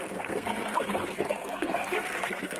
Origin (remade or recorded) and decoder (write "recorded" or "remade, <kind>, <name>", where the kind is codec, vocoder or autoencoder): remade, codec, SNAC